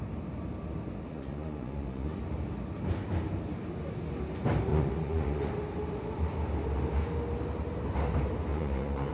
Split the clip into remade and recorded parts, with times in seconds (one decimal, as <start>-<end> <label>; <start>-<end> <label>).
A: 0.0-1.1 recorded; 1.1-2.2 remade; 2.2-4.7 recorded; 4.7-5.5 remade; 5.5-8.5 recorded; 8.5-9.1 remade